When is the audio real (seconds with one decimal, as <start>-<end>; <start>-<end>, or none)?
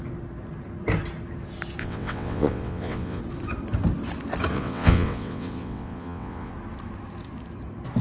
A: 0.0-1.8; 3.2-4.5; 6.5-8.0